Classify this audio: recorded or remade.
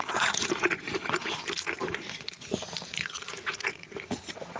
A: remade